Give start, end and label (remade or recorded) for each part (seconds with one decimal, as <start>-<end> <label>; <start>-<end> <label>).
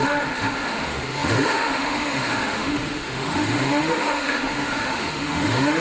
0.0-5.8 remade